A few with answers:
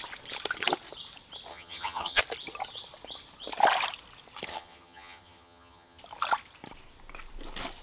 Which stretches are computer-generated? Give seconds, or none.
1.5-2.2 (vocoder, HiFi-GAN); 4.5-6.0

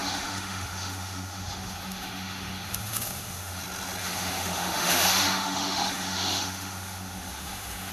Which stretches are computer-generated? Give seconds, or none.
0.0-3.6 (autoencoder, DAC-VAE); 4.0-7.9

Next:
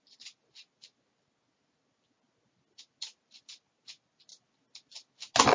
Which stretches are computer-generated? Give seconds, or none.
none

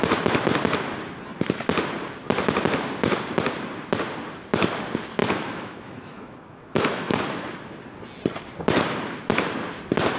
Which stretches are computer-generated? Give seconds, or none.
5.2-7.2 (autoencoder, DAC-VAE)

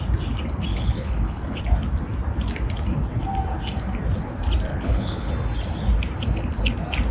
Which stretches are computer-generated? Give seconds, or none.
0.7-1.6 (codec, HILCodec); 4.7-5.3

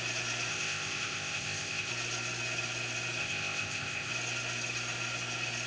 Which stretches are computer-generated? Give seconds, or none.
0.5-1.9 (codec, ZipCodec); 3.2-4.1

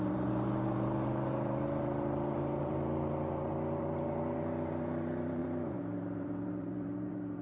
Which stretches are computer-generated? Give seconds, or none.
0.0-7.4 (vocoder, BigVGAN v2)